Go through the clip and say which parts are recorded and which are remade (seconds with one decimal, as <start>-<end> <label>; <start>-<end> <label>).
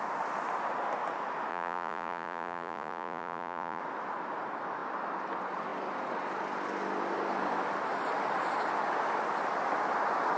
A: 0.0-1.5 recorded; 1.5-3.8 remade; 3.8-10.4 recorded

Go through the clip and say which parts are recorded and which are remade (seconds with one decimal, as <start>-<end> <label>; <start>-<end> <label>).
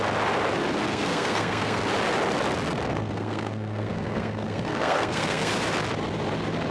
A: 0.0-0.9 recorded; 0.9-1.8 remade; 1.8-2.9 recorded; 2.9-5.5 remade; 5.5-6.7 recorded